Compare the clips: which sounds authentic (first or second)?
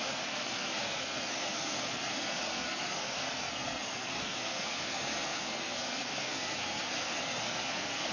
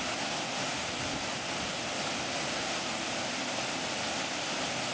second